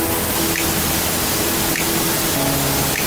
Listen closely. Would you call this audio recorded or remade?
recorded